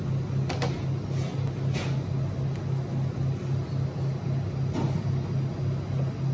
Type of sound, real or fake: real